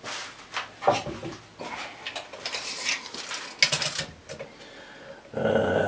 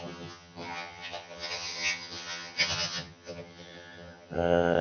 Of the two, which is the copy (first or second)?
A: second